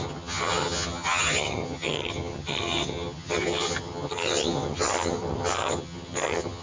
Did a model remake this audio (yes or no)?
yes